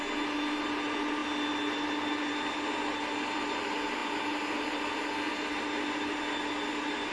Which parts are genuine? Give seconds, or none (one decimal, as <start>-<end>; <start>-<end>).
0.0-7.1